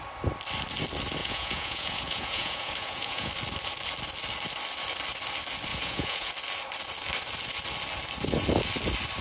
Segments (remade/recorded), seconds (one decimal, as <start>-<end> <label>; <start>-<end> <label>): 0.0-1.2 recorded; 1.2-3.3 remade; 3.3-5.7 recorded; 5.7-6.3 remade; 6.3-9.2 recorded